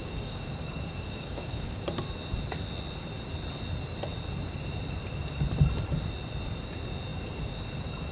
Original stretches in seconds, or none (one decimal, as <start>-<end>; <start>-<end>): 1.8-8.1